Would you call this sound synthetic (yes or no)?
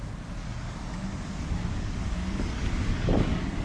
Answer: yes